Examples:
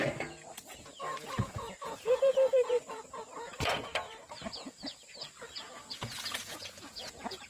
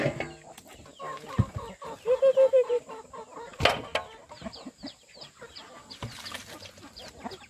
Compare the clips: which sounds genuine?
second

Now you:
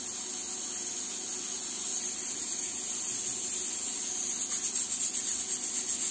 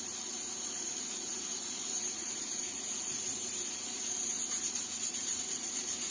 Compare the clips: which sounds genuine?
first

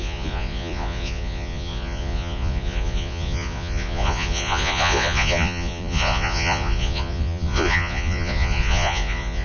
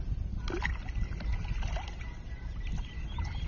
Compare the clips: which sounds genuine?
second